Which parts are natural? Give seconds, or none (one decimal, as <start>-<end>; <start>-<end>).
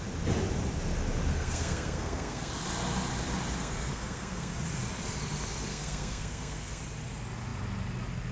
0.0-1.3; 2.5-3.6; 4.5-5.7; 6.8-8.3